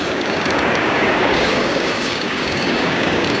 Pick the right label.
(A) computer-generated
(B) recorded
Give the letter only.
A